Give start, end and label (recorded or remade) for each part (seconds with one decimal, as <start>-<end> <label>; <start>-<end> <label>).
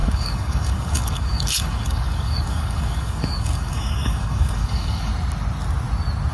0.0-5.1 remade; 5.1-6.3 recorded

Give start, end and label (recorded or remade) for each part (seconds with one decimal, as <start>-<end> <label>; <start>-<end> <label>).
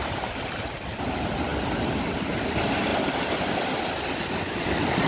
0.0-5.1 recorded